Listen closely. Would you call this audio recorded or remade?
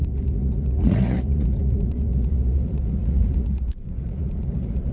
remade